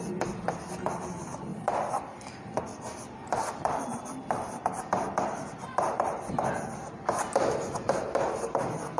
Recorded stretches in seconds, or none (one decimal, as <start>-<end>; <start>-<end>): 0.0-1.5; 6.5-9.0